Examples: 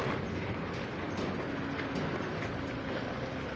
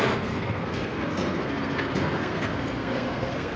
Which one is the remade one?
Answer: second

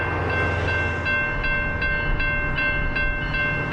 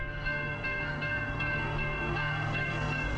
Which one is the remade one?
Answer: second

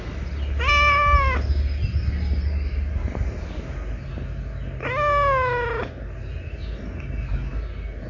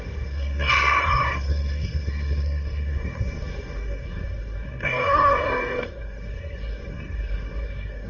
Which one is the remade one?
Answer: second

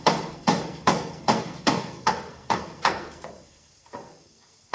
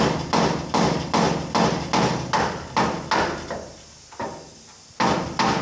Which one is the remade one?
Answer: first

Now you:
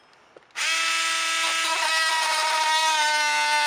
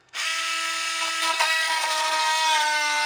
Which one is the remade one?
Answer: second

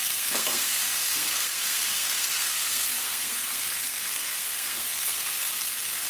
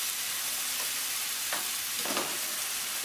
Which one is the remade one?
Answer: first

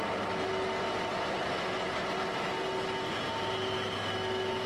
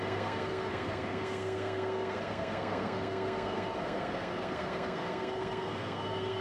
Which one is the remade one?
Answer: second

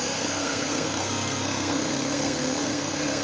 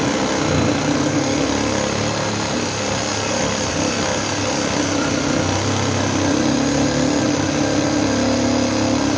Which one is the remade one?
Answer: first